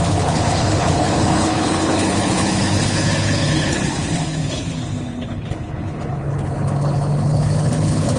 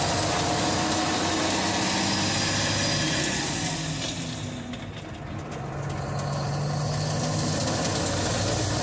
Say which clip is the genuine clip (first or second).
second